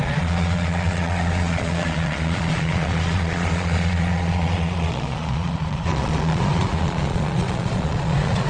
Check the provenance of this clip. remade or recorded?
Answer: remade